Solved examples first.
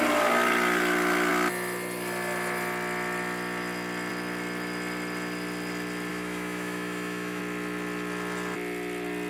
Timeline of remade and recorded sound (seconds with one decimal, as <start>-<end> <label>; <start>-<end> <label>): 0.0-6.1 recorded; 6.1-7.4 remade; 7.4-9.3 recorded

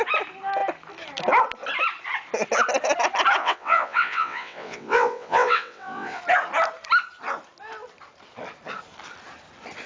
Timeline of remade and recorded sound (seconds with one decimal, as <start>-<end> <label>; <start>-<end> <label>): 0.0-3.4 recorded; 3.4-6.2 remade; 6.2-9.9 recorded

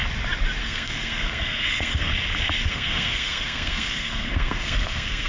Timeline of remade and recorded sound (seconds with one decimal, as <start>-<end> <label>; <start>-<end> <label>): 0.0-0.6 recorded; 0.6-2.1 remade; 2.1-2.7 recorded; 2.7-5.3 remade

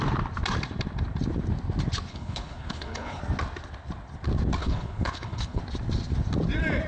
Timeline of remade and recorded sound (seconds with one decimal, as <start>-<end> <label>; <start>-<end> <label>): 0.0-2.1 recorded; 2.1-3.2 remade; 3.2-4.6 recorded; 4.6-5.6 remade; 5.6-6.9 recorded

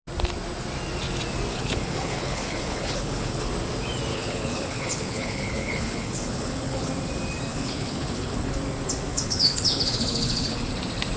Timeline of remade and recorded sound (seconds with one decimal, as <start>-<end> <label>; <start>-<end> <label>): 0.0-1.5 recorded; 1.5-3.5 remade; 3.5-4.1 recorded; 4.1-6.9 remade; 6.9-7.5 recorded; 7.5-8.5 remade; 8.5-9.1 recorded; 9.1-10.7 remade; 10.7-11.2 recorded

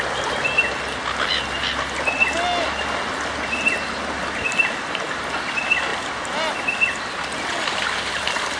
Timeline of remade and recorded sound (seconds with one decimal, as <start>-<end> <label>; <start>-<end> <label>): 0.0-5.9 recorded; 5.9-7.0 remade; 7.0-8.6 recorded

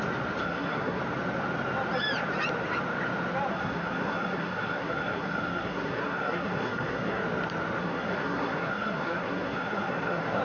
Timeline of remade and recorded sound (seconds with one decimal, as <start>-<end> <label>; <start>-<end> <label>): 0.0-0.4 recorded; 0.4-1.0 remade; 1.0-3.5 recorded; 3.5-7.2 remade; 7.2-7.8 recorded; 7.8-10.4 remade